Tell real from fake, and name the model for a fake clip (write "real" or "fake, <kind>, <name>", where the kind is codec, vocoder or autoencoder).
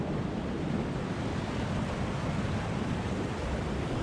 real